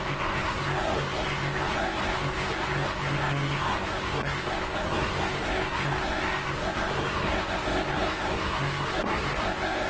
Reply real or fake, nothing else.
fake